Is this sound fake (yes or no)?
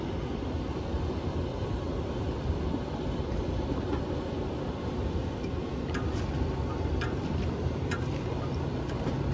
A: no